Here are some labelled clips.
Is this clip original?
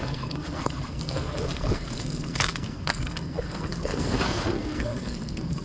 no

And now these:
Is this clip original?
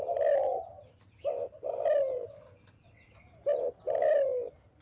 yes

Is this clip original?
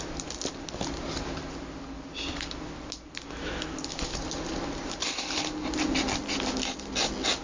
yes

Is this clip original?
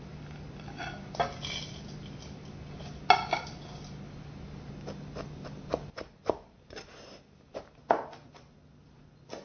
yes